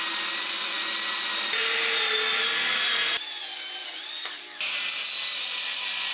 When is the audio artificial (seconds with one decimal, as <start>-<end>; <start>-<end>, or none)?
none